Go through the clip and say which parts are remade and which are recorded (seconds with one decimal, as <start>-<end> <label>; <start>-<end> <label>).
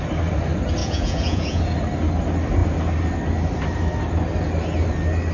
0.0-0.8 recorded; 0.8-1.6 remade; 1.6-5.3 recorded